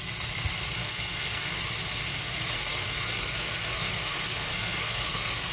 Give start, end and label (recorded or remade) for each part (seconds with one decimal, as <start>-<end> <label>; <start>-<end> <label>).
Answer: 0.0-0.8 recorded; 0.8-1.6 remade; 1.6-2.1 recorded; 2.1-5.5 remade